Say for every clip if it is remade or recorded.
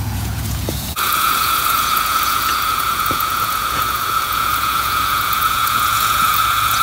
remade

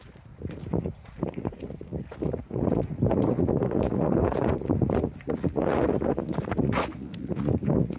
remade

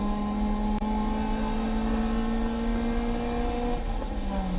recorded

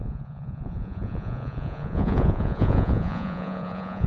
remade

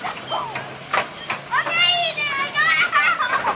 recorded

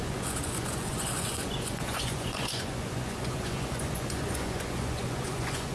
remade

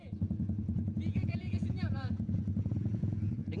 remade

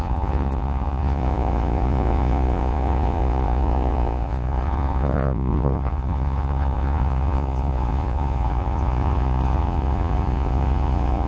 remade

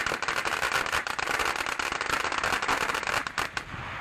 recorded